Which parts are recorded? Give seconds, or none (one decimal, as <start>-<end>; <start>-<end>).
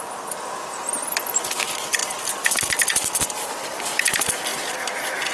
2.0-3.2